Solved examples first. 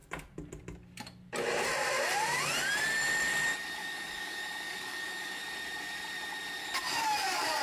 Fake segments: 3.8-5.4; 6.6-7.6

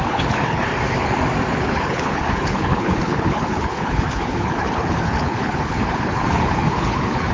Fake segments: 0.0-0.7; 1.5-7.3